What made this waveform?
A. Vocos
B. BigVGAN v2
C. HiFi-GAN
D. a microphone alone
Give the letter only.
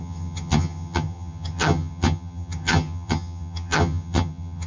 C